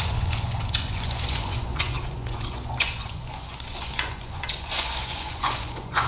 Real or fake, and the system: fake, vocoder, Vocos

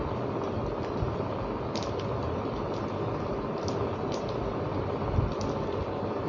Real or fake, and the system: real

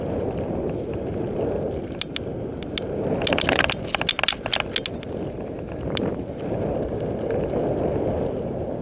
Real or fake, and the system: real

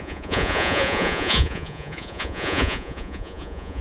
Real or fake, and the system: fake, vocoder, Vocos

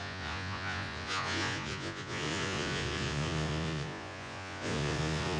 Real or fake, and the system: fake, vocoder, Vocos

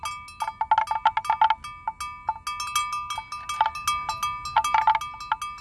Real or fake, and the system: real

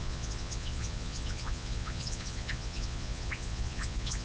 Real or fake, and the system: fake, vocoder, Vocos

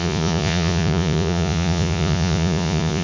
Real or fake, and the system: fake, vocoder, Vocos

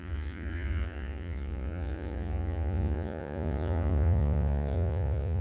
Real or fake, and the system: fake, vocoder, Vocos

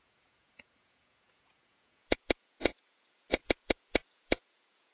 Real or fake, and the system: fake, vocoder, Vocos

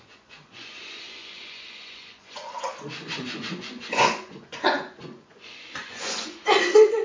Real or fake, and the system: fake, vocoder, Vocos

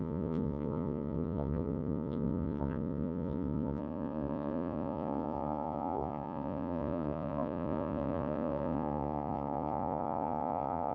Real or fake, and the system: fake, vocoder, Vocos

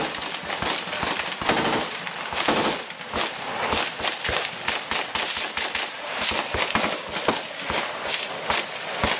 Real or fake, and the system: real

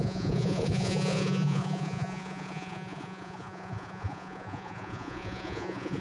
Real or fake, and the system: fake, vocoder, Vocos